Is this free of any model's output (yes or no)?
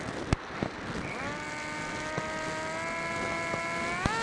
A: yes